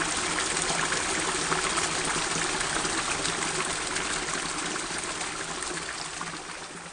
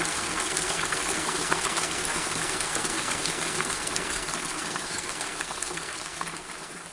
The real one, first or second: first